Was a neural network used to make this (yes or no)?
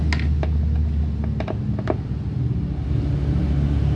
no